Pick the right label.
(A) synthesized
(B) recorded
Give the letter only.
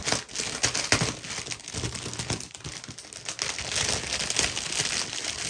B